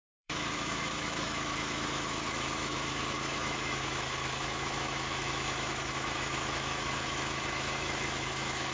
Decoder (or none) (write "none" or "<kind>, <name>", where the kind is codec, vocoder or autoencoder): autoencoder, DAC-VAE